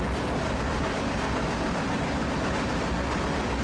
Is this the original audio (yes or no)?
yes